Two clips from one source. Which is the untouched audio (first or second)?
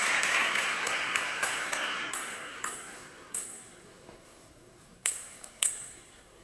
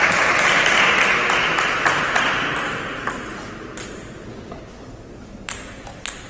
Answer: second